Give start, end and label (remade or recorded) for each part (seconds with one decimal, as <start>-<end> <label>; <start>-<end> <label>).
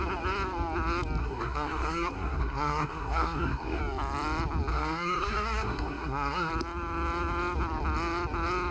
0.0-1.2 recorded; 1.2-3.8 remade; 3.8-4.7 recorded; 4.7-6.5 remade; 6.5-8.7 recorded